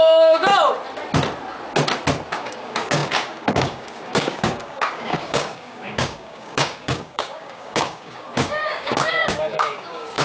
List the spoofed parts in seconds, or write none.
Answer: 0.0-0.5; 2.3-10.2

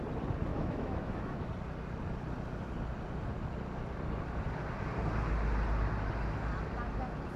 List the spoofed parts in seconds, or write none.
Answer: 0.5-1.5

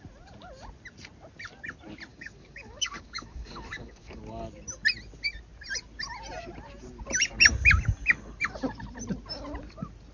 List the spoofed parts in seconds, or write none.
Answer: 2.1-4.2

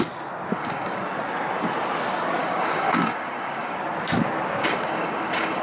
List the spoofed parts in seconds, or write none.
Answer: 0.5-1.0; 2.4-3.8; 4.6-5.6

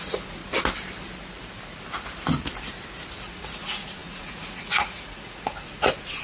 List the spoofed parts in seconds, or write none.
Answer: 0.0-0.4; 3.2-6.2

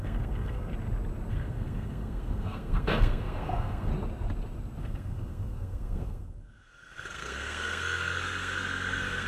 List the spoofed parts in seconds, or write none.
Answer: 0.0-0.7; 1.3-3.9; 4.8-9.3